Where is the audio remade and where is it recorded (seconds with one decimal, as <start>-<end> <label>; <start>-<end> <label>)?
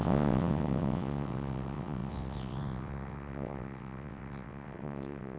0.0-5.4 remade